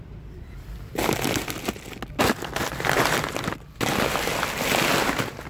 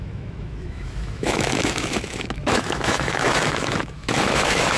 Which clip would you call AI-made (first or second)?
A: second